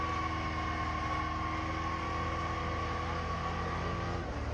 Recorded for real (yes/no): yes